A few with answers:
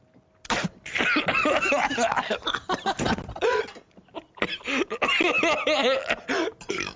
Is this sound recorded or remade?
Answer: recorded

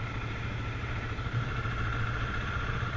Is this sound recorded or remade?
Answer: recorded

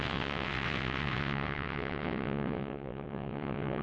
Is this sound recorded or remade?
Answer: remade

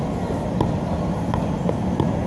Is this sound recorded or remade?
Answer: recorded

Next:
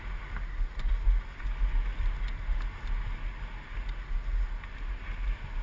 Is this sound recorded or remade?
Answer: recorded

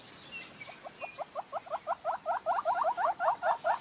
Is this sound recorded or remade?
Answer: recorded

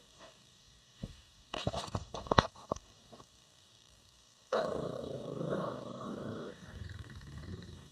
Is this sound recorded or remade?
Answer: remade